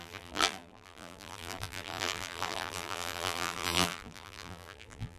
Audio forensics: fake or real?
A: fake